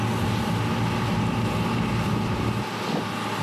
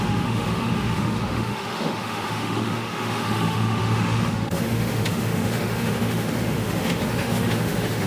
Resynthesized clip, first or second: second